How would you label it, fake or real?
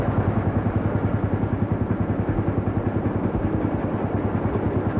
real